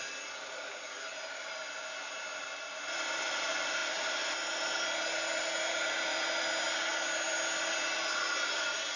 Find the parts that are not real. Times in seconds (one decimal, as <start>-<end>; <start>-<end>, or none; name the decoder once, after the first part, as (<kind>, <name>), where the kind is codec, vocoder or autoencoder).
none